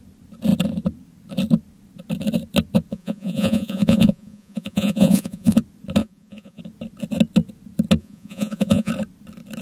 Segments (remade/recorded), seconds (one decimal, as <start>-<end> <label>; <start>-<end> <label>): 0.0-2.9 recorded; 2.9-5.6 remade; 5.6-6.0 recorded; 6.0-6.6 remade; 6.6-8.0 recorded; 8.0-8.9 remade; 8.9-9.6 recorded